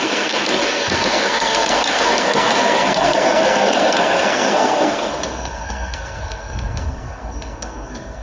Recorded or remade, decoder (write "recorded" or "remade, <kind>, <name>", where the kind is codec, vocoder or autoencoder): remade, codec, SNAC